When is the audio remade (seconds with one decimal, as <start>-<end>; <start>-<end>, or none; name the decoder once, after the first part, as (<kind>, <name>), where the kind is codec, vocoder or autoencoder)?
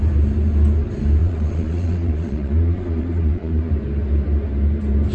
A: 1.2-3.7 (vocoder, Vocos)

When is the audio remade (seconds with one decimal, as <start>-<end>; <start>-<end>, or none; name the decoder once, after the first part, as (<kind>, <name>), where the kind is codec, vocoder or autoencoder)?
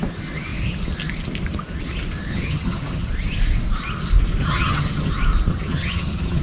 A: 2.3-3.1 (vocoder, HiFi-GAN); 4.4-5.1; 5.5-6.4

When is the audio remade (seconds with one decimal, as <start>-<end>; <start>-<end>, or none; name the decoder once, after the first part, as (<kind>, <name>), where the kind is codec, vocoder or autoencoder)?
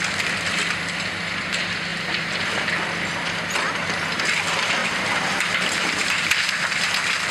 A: 1.9-2.7 (vocoder, BigVGAN v2); 4.8-6.3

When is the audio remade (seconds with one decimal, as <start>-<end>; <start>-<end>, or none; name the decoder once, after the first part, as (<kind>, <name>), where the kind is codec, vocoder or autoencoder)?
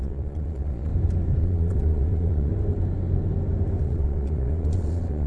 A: 0.0-0.9 (vocoder, Vocos); 1.4-2.5; 3.8-5.3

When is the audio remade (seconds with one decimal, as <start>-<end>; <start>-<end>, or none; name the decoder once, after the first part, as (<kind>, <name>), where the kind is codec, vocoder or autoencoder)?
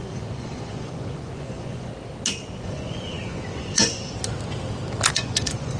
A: 0.0-1.9 (vocoder, Vocos); 2.6-4.1; 5.1-5.8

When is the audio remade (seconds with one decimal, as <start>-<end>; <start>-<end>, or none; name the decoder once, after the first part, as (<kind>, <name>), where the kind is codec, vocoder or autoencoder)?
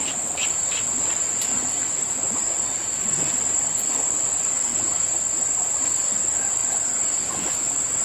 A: none